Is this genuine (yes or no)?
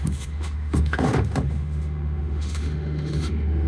no